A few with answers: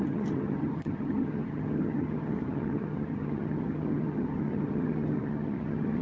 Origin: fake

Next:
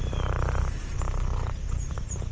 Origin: real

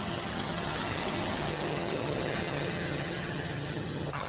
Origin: fake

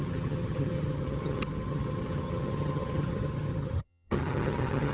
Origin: fake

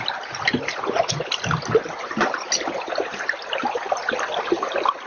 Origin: real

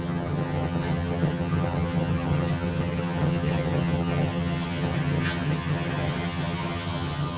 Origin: fake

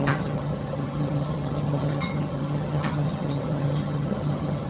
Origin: fake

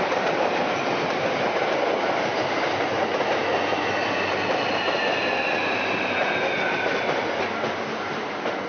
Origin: real